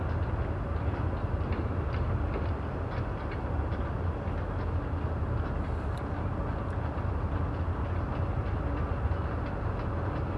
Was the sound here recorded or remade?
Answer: recorded